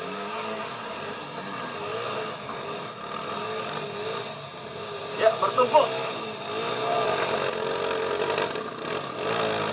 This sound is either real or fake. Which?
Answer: real